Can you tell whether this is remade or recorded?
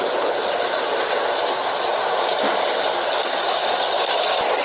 recorded